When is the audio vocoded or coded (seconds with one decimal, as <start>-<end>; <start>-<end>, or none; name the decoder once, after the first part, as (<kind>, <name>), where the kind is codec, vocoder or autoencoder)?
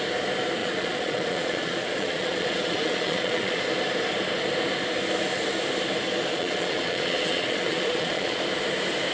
0.6-3.6 (vocoder, Vocos); 6.3-8.4